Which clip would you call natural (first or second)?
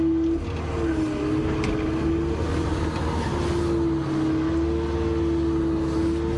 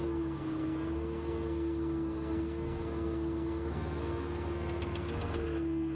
first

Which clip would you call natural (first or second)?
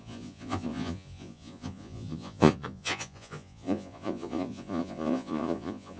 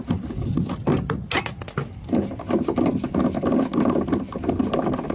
second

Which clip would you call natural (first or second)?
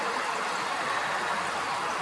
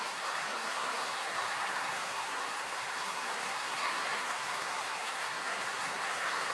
first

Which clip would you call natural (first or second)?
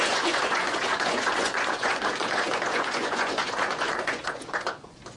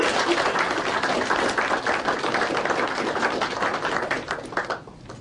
second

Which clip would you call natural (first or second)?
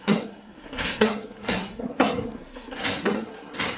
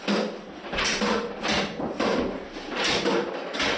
second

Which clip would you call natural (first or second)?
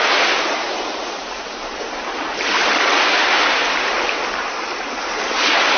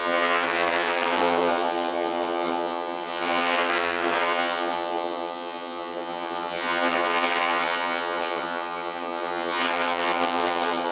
first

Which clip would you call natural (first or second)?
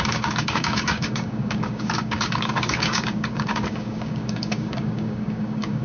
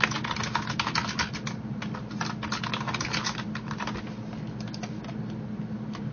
second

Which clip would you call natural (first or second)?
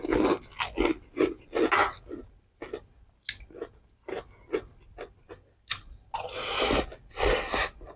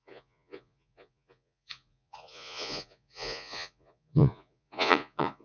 first